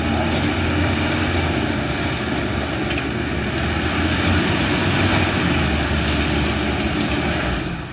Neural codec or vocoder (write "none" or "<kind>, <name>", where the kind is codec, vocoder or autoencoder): none